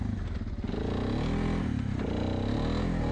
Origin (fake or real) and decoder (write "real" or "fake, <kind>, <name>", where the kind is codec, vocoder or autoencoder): real